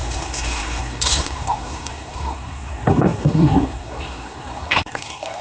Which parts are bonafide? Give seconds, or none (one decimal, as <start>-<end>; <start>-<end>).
none

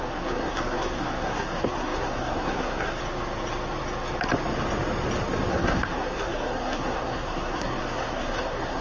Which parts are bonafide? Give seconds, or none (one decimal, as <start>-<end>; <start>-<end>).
3.0-5.5